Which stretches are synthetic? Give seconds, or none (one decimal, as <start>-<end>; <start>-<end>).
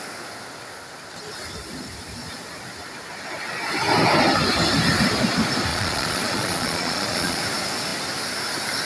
5.7-7.4